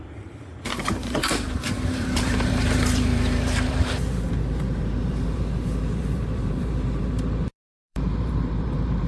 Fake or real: fake